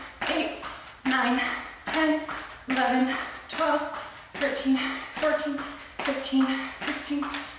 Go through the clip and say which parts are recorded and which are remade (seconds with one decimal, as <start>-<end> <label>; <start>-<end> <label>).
0.0-7.6 recorded